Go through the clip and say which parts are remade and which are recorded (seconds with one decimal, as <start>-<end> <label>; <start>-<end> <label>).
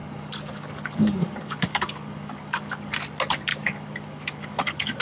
0.0-3.0 remade; 3.0-3.5 recorded; 3.5-5.0 remade